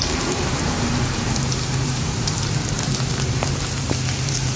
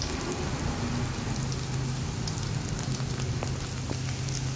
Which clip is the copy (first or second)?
first